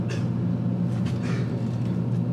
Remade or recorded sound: recorded